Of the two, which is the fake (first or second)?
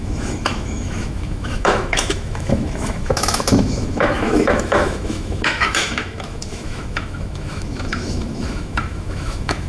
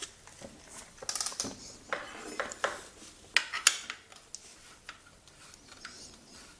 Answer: first